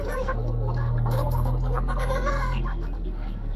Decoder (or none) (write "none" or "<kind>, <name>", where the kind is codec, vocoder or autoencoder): codec, SNAC